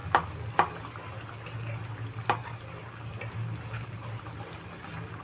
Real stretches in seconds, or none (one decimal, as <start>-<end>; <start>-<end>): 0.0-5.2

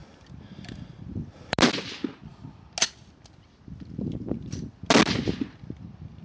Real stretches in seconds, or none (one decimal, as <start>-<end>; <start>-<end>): 0.0-6.2

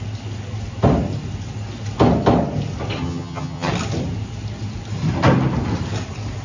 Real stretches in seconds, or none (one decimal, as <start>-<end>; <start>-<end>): 0.0-3.0; 3.7-6.4